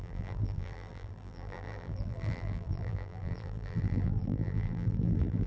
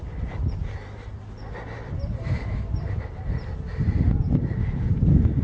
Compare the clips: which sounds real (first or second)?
second